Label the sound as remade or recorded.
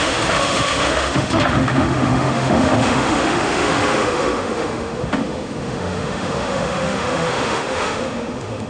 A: remade